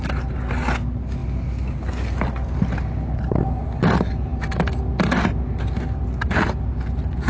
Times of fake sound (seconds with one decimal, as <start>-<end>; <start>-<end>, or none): none

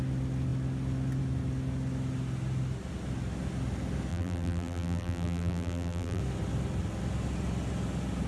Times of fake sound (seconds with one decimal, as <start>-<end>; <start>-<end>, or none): 4.1-6.2

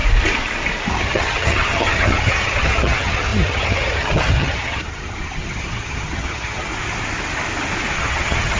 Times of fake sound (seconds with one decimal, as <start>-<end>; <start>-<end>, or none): 0.9-6.7; 7.9-8.6

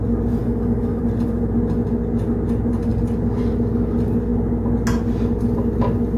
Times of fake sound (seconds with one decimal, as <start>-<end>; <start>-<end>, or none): 0.4-1.0

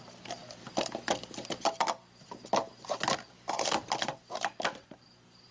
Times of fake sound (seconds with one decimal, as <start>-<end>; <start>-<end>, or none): none

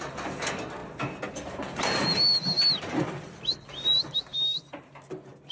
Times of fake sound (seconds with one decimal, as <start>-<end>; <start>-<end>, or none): none